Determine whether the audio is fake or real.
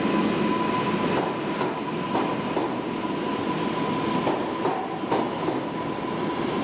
real